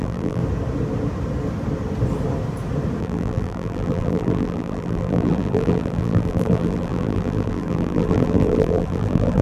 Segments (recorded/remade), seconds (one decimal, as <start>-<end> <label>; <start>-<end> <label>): 0.0-0.4 remade; 0.4-3.0 recorded; 3.0-9.4 remade